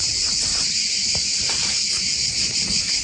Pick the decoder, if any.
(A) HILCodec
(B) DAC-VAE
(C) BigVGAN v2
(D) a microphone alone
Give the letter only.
C